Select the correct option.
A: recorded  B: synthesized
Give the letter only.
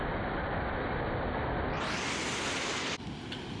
A